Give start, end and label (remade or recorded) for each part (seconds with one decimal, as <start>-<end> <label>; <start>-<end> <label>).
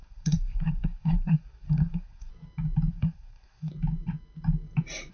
0.0-2.3 remade; 2.3-2.9 recorded; 2.9-3.7 remade; 3.7-5.1 recorded